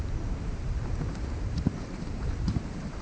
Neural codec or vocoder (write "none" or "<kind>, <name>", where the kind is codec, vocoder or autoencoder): vocoder, BigVGAN v2